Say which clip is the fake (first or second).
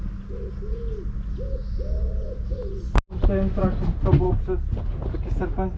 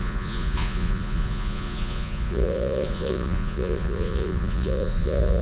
second